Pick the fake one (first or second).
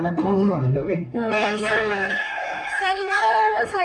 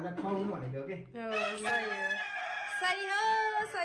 first